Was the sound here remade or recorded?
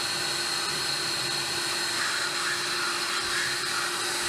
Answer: recorded